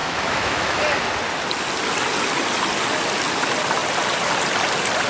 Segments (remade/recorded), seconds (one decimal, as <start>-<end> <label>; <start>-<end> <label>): 0.0-0.8 remade; 0.8-5.1 recorded